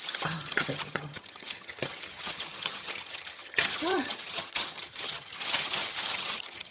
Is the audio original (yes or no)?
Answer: no